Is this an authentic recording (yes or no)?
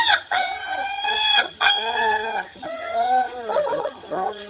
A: no